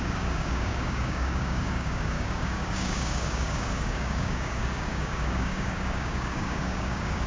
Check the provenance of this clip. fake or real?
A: fake